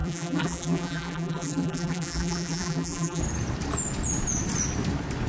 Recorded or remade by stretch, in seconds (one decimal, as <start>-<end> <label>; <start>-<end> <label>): 0.0-3.2 remade; 3.2-5.3 recorded